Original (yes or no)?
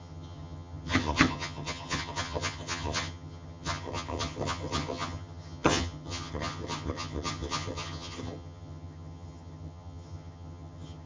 no